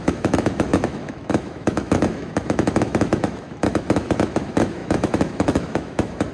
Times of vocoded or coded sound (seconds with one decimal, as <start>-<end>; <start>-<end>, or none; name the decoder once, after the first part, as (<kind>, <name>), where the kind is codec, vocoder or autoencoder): 0.0-6.3 (autoencoder, DAC-VAE)

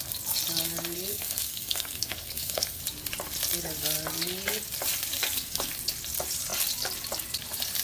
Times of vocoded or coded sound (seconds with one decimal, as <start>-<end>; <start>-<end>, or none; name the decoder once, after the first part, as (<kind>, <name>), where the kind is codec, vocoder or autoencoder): 1.1-2.8 (codec, SNAC); 5.2-5.7

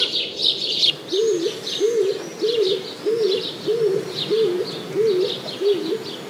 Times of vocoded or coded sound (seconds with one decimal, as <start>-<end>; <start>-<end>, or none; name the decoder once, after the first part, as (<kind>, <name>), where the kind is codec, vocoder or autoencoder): none

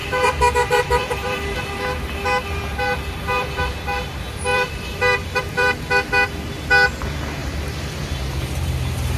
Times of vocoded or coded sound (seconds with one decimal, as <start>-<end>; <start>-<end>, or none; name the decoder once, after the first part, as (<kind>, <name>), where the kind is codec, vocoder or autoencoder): 0.0-1.6 (vocoder, BigVGAN v2); 4.5-5.8; 7.4-8.2